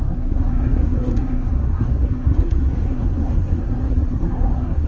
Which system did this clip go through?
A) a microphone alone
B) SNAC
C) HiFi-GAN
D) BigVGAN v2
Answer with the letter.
B